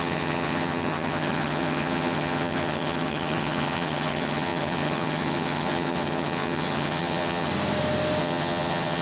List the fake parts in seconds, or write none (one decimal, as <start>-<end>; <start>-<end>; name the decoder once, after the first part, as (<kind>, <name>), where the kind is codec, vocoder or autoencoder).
0.0-7.5 (vocoder, HiFi-GAN); 8.2-9.0